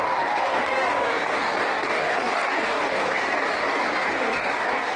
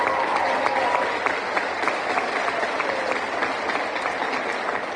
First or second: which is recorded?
second